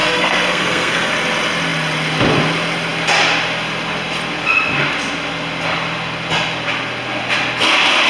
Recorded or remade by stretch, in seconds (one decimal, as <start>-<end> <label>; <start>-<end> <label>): 0.0-1.1 remade; 1.1-8.1 recorded